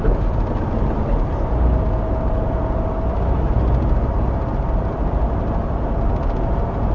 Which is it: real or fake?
real